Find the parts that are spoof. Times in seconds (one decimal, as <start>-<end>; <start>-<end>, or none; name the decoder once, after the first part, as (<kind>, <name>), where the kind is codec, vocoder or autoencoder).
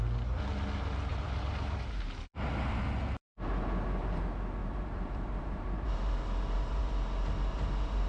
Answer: 1.1-2.8 (vocoder, BigVGAN v2); 4.6-6.9; 7.5-8.1